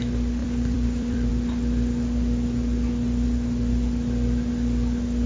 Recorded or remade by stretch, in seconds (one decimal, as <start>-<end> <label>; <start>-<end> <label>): 0.0-0.4 recorded; 0.4-1.3 remade; 1.3-5.3 recorded

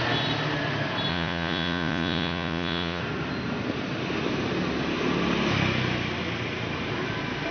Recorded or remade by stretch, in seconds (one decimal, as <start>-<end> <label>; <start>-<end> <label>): 0.0-1.1 recorded; 1.1-3.0 remade; 3.0-7.5 recorded

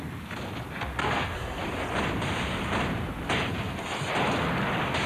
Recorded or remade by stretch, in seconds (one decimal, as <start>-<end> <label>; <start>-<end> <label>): 0.0-1.0 recorded; 1.0-1.6 remade; 1.6-5.1 recorded